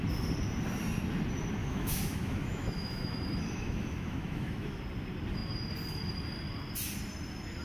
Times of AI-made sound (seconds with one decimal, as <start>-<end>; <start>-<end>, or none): 1.6-4.8